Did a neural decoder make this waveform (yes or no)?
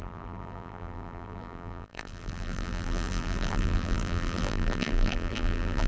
yes